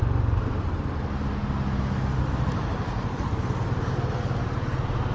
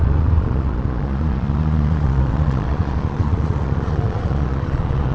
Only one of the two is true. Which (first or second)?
first